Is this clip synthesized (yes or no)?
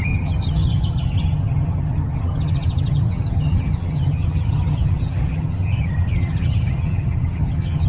yes